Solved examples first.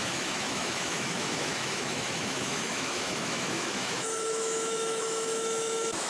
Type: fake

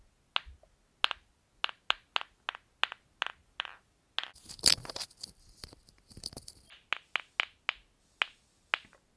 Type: real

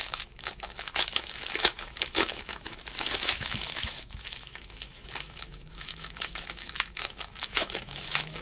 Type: fake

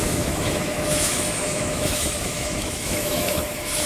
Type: fake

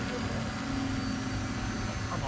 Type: real